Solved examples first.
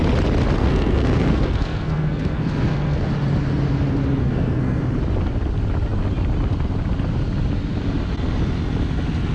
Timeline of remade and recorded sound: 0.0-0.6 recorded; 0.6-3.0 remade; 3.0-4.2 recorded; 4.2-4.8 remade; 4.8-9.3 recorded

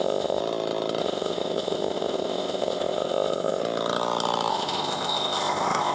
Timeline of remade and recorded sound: 0.0-0.4 remade; 0.4-1.0 recorded; 1.0-3.6 remade; 3.6-4.5 recorded; 4.5-5.9 remade